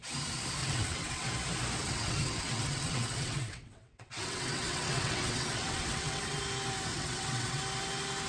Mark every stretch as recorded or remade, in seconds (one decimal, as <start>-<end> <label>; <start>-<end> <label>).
0.0-0.6 recorded; 0.6-1.3 remade; 1.3-1.8 recorded; 1.8-6.4 remade; 6.4-6.9 recorded; 6.9-7.6 remade; 7.6-8.3 recorded